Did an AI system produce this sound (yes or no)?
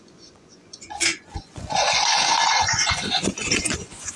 yes